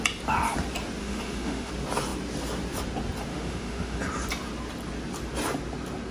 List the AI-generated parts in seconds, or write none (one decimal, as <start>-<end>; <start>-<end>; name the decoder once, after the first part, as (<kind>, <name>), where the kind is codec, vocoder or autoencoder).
1.0-1.7 (autoencoder, DAC-VAE); 3.3-4.0